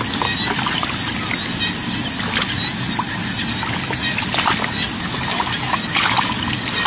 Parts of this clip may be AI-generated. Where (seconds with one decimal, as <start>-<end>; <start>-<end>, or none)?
none